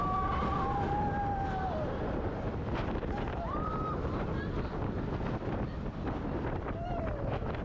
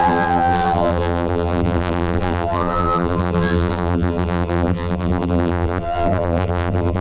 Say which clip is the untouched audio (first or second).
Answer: first